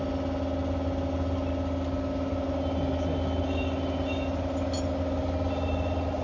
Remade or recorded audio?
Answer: recorded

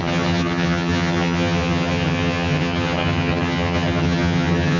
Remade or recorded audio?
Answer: remade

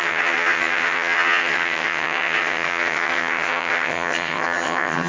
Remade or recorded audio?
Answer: remade